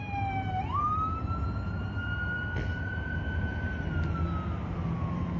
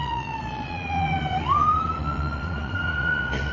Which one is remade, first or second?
second